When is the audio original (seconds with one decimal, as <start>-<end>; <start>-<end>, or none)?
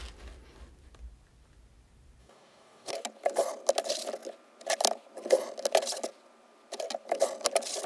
0.0-2.2; 2.9-7.9